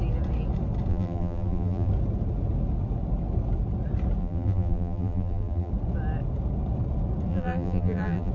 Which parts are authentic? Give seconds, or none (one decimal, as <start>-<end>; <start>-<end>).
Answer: 0.0-0.9; 1.9-4.2; 5.7-7.3